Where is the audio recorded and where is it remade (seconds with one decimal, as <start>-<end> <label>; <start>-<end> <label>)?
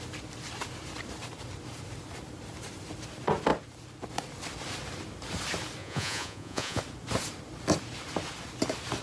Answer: 0.0-5.8 recorded; 5.8-6.8 remade; 6.8-9.0 recorded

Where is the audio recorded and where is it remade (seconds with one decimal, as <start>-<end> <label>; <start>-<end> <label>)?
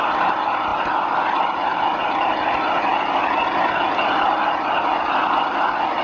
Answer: 0.0-6.0 recorded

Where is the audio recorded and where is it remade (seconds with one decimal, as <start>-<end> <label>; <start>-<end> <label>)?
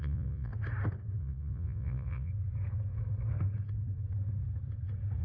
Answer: 0.0-0.5 remade; 0.5-1.2 recorded; 1.2-2.3 remade; 2.3-5.2 recorded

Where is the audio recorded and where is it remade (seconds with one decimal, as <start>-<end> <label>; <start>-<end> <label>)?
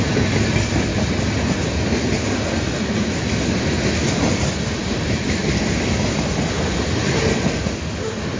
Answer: 0.0-8.4 recorded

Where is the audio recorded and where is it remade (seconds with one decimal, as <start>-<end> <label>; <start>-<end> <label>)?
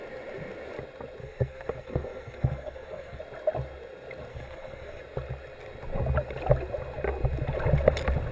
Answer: 0.0-1.2 recorded; 1.2-3.2 remade; 3.2-4.3 recorded; 4.3-5.0 remade; 5.0-8.3 recorded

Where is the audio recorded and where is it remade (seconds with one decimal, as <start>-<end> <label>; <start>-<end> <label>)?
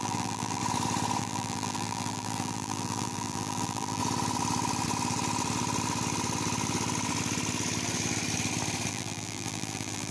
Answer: 0.0-0.6 remade; 0.6-1.2 recorded; 1.2-4.0 remade; 4.0-8.9 recorded; 8.9-10.1 remade